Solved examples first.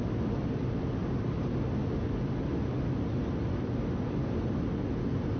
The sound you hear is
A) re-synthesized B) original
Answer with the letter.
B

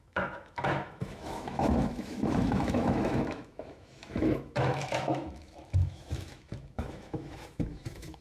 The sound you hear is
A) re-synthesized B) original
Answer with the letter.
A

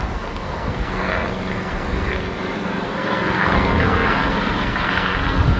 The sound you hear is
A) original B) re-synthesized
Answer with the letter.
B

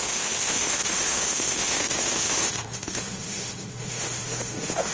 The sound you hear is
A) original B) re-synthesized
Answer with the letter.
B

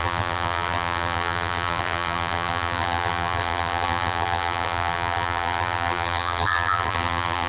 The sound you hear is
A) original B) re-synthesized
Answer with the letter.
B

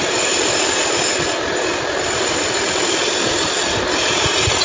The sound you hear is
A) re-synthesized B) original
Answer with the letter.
B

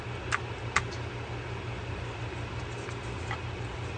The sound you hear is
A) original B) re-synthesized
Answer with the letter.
A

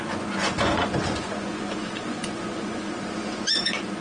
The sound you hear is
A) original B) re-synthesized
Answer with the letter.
B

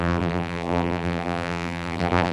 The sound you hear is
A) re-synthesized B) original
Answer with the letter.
A